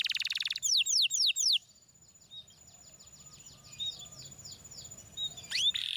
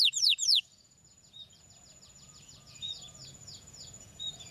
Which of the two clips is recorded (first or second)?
first